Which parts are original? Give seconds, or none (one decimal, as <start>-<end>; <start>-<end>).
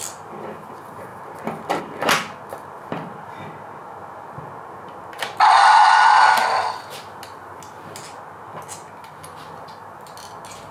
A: 0.0-10.7